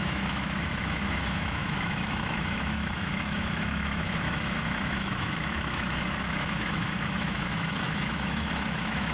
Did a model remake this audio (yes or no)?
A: yes